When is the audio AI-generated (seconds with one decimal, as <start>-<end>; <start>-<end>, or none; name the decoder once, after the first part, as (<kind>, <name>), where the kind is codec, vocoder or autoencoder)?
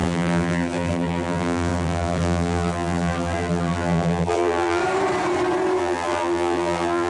0.0-4.8 (vocoder, BigVGAN v2); 5.8-7.1